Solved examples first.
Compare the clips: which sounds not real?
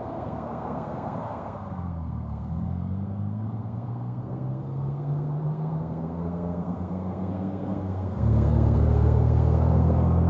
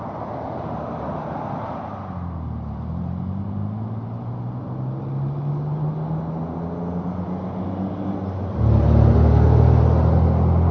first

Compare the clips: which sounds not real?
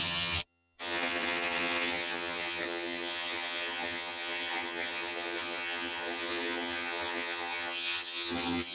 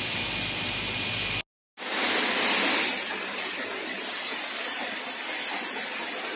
first